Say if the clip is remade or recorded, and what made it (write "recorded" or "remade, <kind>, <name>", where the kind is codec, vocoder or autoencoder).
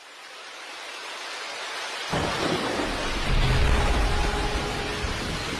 recorded